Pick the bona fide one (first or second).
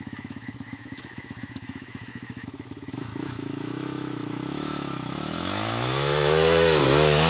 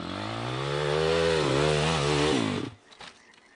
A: second